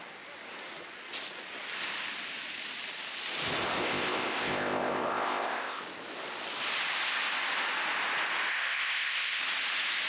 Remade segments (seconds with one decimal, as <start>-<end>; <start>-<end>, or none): 3.8-5.8; 8.5-9.4